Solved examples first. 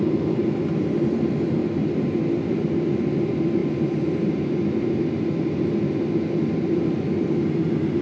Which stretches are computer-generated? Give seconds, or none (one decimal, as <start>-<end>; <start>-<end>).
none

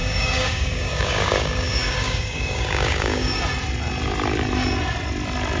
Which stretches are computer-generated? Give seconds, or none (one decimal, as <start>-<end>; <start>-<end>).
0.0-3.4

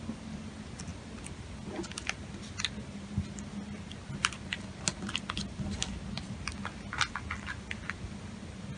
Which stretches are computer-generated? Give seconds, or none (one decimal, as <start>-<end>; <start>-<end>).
none

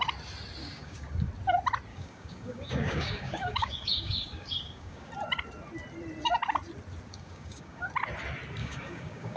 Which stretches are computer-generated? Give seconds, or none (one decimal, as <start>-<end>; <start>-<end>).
0.6-1.3; 1.9-5.1; 7.1-7.9; 8.6-9.4

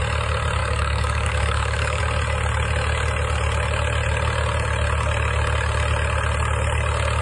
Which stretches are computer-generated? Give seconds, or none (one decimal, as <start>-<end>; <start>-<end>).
0.6-2.0